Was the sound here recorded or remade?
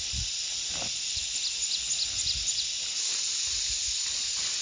recorded